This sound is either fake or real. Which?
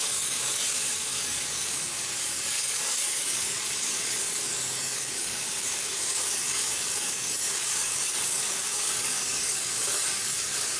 fake